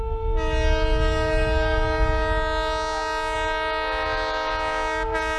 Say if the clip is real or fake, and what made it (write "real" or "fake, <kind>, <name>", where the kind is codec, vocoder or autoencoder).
real